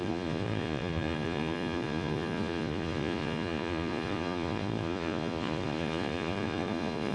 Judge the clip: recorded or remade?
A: remade